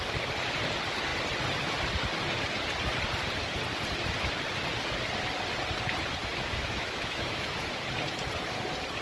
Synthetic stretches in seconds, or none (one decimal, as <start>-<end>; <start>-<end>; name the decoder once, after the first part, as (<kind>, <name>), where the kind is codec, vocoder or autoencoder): 6.2-7.6 (autoencoder, DAC-VAE)